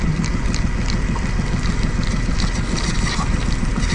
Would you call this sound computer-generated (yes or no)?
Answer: no